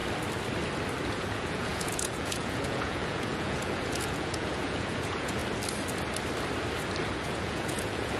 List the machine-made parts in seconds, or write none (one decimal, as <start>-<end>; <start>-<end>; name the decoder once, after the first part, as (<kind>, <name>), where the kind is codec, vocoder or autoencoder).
1.1-5.4 (vocoder, Vocos); 7.1-8.2

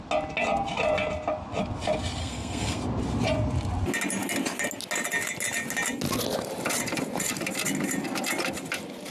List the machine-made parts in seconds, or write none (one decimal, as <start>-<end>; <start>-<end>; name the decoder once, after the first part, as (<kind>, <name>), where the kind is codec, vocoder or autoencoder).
2.2-2.8 (codec, SNAC)

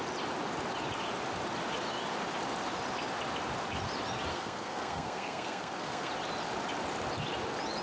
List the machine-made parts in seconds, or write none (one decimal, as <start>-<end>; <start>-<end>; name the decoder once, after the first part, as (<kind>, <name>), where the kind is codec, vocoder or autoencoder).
4.3-6.1 (codec, SNAC)

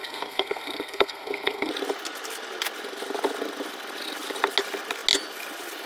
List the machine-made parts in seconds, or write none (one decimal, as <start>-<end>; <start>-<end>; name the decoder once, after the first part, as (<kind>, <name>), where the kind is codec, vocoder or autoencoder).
0.0-1.7 (codec, SNAC)

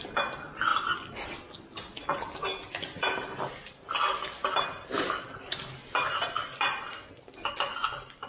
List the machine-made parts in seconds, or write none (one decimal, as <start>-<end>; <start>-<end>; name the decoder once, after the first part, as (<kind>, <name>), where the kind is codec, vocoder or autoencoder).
none